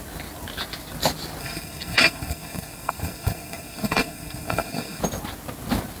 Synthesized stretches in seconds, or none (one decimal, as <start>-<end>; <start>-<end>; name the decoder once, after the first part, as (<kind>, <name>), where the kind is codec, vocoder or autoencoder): 1.4-5.0 (codec, SNAC)